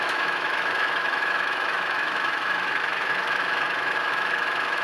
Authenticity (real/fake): fake